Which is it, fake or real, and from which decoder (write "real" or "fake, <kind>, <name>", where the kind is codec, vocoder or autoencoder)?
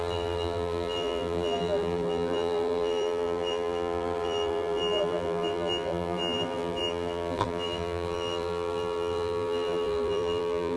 fake, vocoder, BigVGAN v2